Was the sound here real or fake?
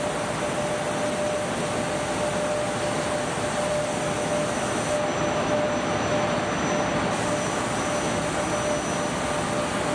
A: real